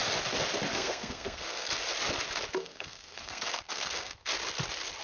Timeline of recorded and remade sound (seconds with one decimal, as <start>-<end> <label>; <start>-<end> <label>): 0.0-0.7 recorded; 0.7-1.7 remade; 1.7-2.5 recorded; 2.5-4.3 remade; 4.3-5.0 recorded